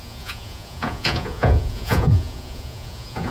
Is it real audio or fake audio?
fake